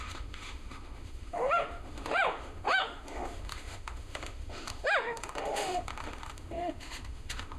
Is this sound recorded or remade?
remade